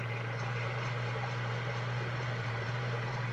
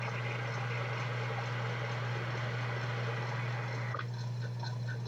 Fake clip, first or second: first